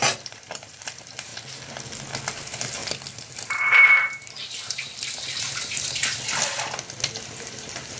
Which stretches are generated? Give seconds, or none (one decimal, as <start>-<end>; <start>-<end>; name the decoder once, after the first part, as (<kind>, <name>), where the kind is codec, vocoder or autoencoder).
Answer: 0.0-1.3 (vocoder, BigVGAN v2); 2.3-2.8; 3.3-4.9; 7.4-8.0

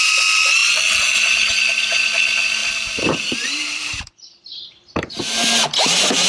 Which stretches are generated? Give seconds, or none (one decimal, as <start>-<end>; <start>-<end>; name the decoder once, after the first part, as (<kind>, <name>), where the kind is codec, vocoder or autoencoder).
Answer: 0.6-1.6 (vocoder, BigVGAN v2); 2.6-4.1; 4.5-5.1

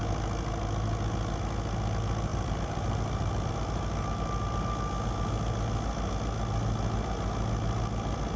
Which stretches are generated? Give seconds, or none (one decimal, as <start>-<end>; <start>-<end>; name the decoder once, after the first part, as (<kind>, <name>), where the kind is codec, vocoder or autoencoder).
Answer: 2.3-3.5 (vocoder, BigVGAN v2)

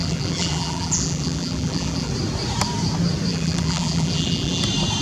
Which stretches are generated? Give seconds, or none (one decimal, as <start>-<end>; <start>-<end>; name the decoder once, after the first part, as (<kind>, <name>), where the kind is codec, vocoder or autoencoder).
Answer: 0.0-2.1 (vocoder, BigVGAN v2); 3.3-4.6